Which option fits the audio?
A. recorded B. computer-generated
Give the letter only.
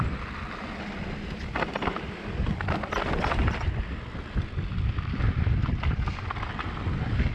A